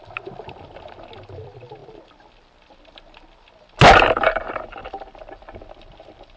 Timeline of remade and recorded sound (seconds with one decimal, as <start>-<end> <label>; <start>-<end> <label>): 0.0-6.4 recorded